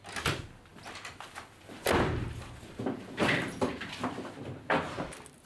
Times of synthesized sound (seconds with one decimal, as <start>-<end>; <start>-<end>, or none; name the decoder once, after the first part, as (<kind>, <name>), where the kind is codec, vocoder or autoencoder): 0.7-4.0 (vocoder, BigVGAN v2)